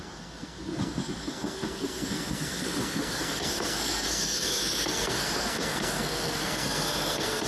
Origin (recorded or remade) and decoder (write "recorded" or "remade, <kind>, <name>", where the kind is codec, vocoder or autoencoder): remade, codec, SNAC